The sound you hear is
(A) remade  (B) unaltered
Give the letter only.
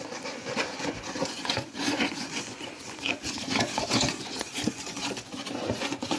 A